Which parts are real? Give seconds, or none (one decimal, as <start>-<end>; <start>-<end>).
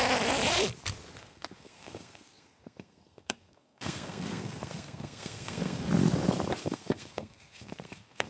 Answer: 0.0-1.2; 5.9-6.6